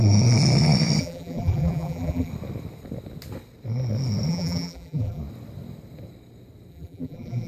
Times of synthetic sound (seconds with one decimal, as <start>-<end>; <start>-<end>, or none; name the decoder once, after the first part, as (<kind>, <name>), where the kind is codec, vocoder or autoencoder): 1.0-2.3 (vocoder, BigVGAN v2); 4.3-5.2; 6.7-7.5